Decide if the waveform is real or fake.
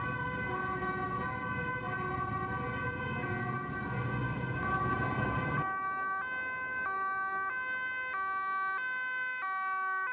real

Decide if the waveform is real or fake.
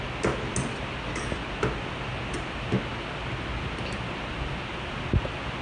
real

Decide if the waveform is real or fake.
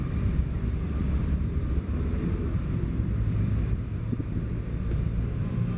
fake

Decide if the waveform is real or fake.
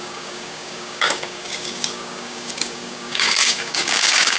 fake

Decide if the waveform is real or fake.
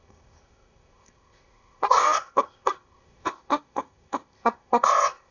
fake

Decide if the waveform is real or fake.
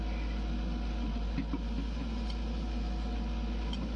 real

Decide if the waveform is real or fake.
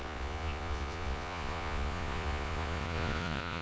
fake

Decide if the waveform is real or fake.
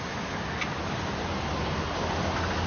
real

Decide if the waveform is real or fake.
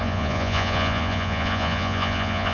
fake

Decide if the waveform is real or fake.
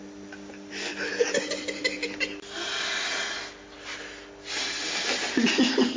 real